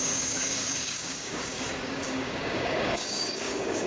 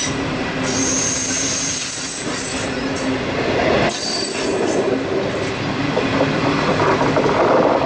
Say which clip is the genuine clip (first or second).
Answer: second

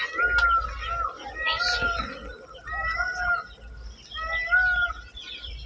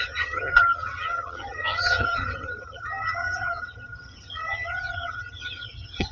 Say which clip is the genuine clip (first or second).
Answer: first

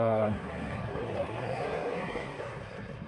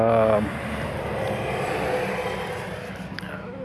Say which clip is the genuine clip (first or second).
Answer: second